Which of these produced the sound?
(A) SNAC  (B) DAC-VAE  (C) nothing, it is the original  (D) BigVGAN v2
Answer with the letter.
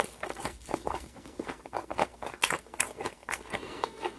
A